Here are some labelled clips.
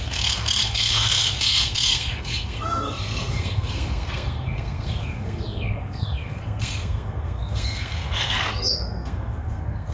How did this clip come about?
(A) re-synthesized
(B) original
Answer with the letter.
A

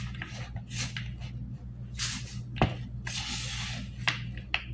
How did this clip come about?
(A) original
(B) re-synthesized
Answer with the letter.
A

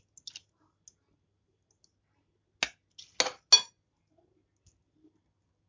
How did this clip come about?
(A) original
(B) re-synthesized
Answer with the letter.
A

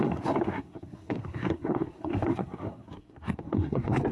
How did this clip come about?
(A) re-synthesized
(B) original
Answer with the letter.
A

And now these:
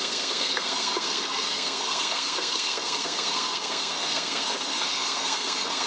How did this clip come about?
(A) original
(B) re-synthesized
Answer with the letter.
B